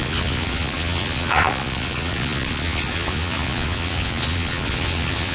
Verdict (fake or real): fake